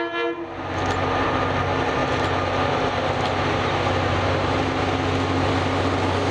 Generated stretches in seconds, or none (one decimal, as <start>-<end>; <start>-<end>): none